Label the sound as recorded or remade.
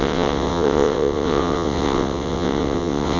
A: remade